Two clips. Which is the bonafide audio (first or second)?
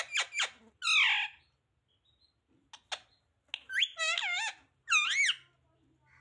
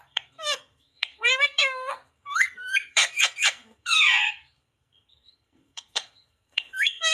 first